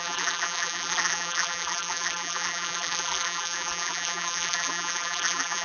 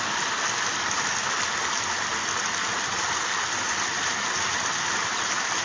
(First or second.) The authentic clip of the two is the second